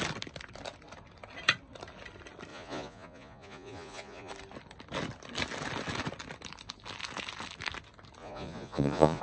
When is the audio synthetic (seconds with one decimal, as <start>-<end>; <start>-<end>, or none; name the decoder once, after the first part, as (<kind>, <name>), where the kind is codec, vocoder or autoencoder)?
2.5-4.3 (vocoder, Vocos); 8.2-9.2